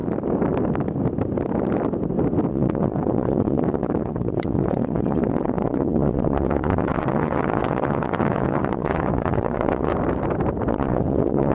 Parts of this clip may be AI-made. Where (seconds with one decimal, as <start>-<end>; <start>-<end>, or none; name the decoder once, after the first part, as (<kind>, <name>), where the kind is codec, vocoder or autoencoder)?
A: 2.5-9.9 (vocoder, WaveNeXt); 10.7-11.5